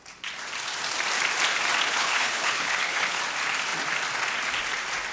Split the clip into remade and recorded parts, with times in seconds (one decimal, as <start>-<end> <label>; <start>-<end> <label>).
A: 0.0-1.9 recorded; 1.9-3.2 remade; 3.2-5.1 recorded